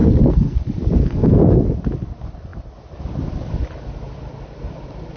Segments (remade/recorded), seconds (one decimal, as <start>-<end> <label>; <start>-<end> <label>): 0.0-0.6 remade; 0.6-1.0 recorded; 1.0-1.6 remade; 1.6-5.2 recorded